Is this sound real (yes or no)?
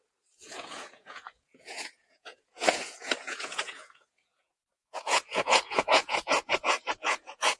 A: no